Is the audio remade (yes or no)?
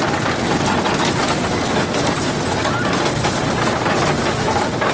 no